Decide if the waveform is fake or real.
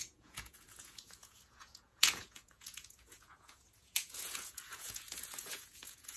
fake